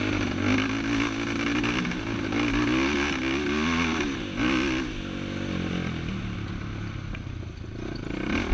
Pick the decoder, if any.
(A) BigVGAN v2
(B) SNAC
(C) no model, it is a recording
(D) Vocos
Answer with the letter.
C